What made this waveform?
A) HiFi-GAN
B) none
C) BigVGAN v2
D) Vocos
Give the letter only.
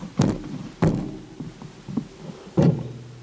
B